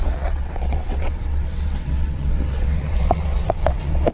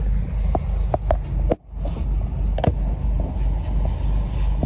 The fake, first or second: first